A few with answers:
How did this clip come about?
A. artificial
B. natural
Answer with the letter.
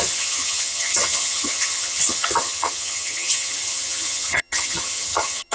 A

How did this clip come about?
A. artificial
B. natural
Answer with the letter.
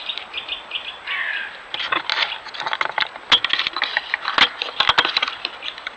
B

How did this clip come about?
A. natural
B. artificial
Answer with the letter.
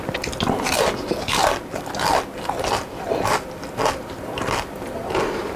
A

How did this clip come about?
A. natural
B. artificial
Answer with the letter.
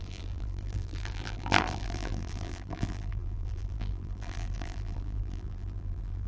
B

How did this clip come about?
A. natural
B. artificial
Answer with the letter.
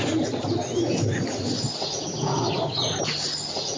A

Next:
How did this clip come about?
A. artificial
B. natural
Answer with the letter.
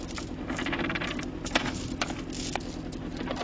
B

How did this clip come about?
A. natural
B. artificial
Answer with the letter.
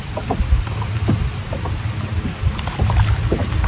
A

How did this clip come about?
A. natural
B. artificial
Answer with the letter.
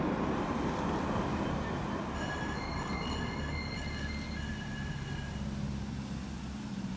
A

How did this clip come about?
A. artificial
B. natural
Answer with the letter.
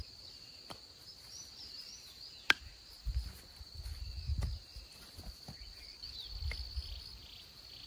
B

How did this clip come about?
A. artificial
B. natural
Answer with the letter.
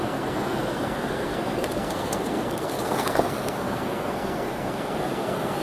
A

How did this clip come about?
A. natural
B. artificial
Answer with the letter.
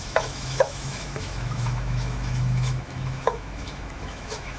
B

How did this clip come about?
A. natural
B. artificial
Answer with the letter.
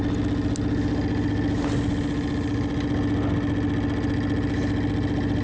A